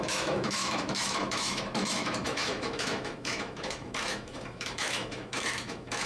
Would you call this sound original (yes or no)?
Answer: no